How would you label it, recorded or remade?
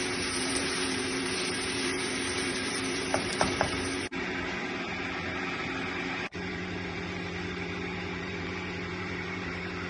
remade